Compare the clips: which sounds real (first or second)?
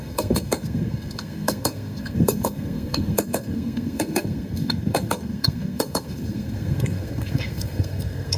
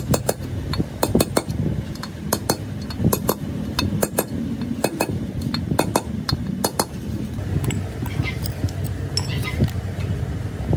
second